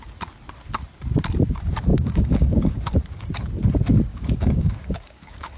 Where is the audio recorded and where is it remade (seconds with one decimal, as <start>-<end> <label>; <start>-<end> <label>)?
0.0-1.9 recorded; 1.9-2.9 remade; 2.9-4.1 recorded; 4.1-5.6 remade